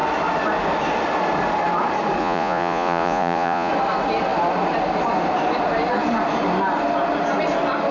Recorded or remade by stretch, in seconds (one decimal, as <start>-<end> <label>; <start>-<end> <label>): 0.0-2.2 recorded; 2.2-3.7 remade; 3.7-7.9 recorded